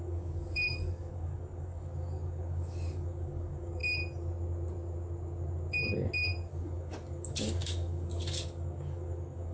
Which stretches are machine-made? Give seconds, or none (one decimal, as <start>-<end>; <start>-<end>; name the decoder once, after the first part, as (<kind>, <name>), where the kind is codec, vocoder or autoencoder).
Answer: 0.0-3.8 (codec, DAC); 6.5-9.5